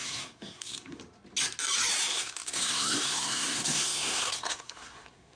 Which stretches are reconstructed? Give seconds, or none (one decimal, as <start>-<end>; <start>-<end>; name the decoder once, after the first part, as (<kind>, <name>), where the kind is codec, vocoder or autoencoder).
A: 0.0-1.0 (codec, SNAC); 2.1-5.4